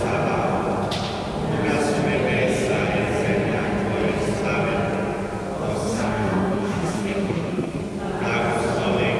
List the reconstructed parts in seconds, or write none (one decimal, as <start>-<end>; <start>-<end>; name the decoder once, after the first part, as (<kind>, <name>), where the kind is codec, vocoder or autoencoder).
5.9-7.8 (codec, SNAC)